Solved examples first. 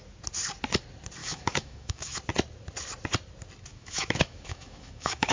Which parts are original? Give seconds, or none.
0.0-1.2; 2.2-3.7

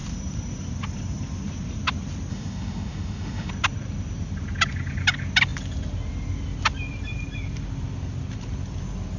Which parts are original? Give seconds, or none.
0.0-2.3; 3.5-9.2